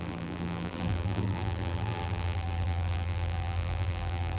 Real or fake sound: fake